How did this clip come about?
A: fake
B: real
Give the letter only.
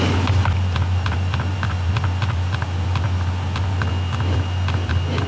B